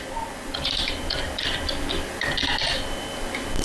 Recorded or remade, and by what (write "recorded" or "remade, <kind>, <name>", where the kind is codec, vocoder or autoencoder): recorded